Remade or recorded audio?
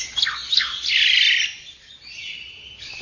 recorded